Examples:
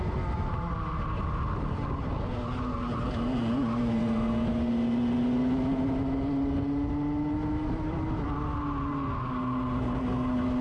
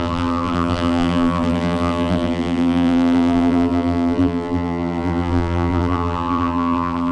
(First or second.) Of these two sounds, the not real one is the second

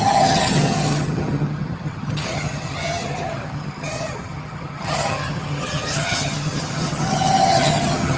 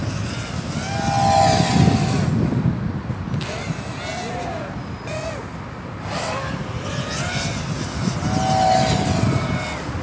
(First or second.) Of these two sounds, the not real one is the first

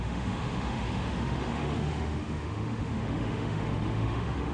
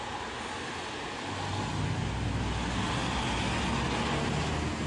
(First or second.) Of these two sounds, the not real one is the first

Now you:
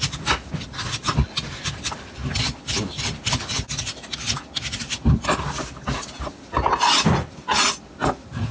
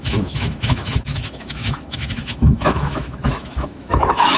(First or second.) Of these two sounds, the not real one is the second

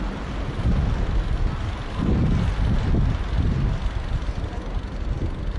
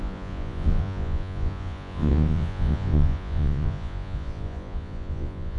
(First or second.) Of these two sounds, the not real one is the second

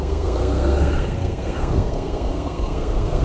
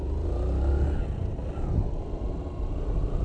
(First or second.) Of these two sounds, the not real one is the first